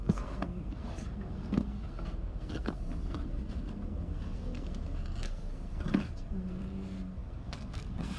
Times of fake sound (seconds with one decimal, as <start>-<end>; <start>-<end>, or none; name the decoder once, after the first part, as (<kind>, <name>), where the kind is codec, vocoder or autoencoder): 0.0-8.2 (codec, SNAC)